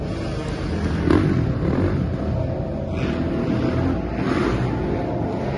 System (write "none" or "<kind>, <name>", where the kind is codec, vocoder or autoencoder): none